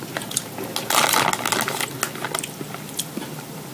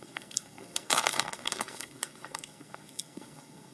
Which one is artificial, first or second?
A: second